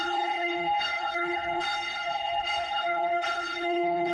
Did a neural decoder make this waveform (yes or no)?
yes